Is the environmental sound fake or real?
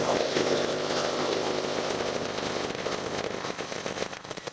fake